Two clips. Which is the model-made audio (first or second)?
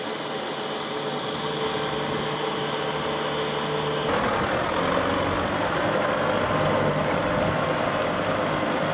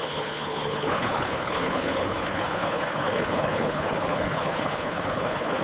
second